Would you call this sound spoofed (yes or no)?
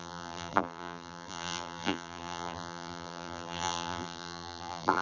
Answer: yes